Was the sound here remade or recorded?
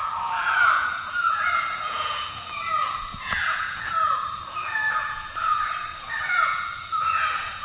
remade